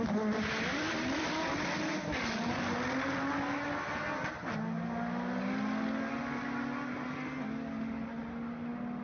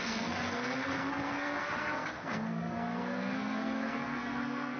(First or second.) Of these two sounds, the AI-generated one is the second